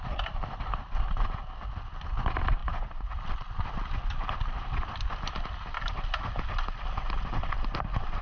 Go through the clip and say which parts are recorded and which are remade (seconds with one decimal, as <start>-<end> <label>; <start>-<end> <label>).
0.0-2.6 recorded; 2.6-3.2 remade; 3.2-8.2 recorded